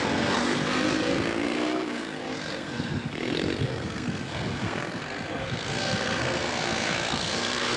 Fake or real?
fake